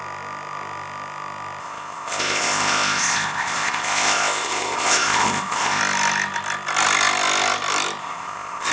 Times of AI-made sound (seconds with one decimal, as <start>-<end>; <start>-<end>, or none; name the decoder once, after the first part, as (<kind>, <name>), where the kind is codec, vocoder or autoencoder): 1.6-5.8 (codec, ZipCodec); 8.0-8.7